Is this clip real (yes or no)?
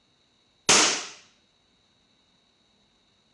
yes